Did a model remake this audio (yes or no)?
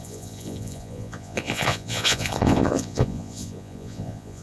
yes